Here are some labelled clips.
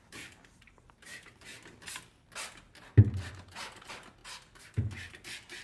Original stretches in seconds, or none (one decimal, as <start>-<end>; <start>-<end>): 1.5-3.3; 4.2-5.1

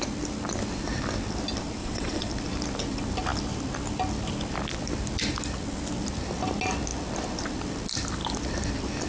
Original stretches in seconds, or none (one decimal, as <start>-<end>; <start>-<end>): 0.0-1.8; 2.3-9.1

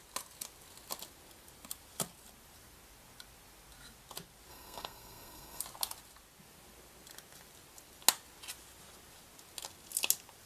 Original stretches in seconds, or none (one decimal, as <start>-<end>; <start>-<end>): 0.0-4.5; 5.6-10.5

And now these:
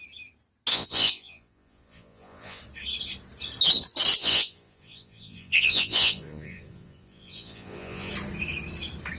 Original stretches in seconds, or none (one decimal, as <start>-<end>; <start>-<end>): 0.0-0.7; 2.6-4.2; 8.1-9.2

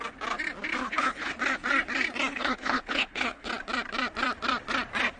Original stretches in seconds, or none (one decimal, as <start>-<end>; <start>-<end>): 0.0-0.8; 1.3-2.3; 3.5-5.2

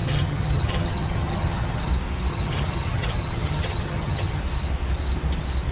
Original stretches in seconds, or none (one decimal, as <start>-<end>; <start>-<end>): 1.9-2.3; 4.4-5.7

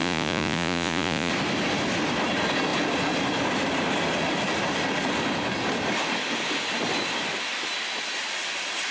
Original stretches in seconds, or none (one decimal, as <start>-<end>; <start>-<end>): 1.3-8.9